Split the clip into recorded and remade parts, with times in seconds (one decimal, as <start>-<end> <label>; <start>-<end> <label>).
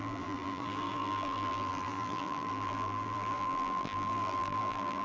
0.0-5.0 remade